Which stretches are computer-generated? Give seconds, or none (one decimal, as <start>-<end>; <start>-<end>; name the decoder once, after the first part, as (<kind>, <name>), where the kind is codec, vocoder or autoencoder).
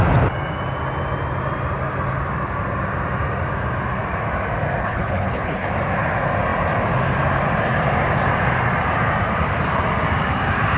4.8-5.7 (codec, HILCodec)